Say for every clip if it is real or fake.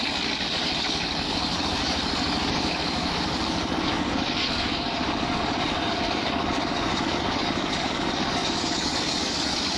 fake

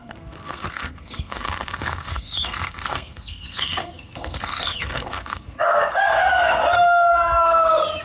fake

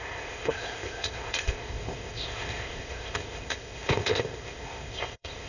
fake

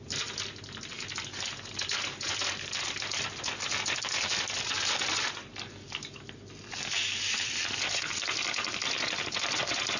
real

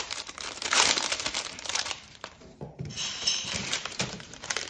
fake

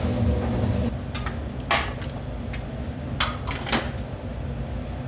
real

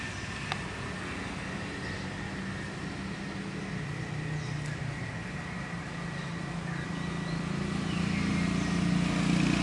real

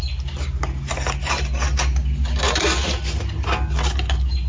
real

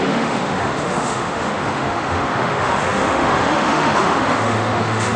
fake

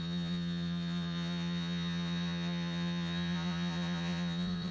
fake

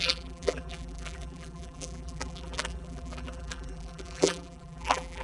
fake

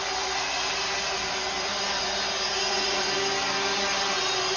real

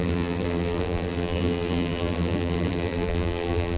fake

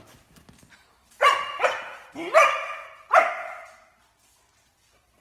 fake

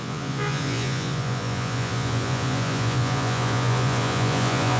fake